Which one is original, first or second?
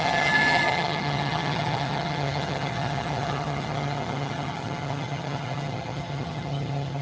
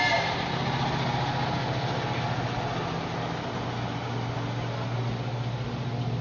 second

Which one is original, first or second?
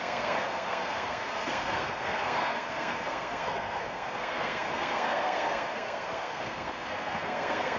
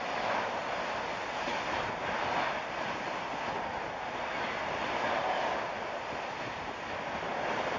second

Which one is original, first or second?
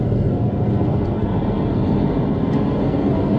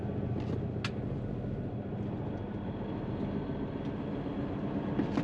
second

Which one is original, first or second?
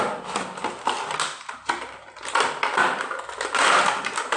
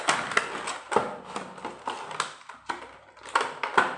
second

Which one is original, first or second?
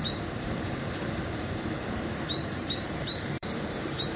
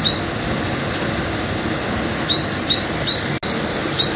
second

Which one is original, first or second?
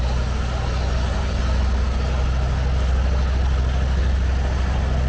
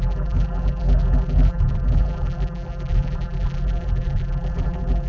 first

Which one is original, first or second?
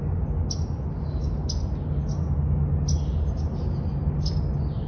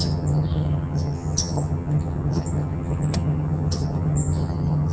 first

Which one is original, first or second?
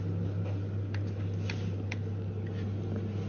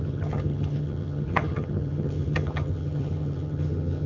first